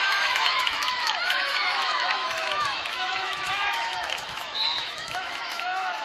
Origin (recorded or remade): remade